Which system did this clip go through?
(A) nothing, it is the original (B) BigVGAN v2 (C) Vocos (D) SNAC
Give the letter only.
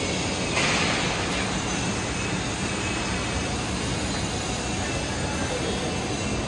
A